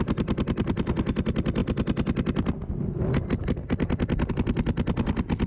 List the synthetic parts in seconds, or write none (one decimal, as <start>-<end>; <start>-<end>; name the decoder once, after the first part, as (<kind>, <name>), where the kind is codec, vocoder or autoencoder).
none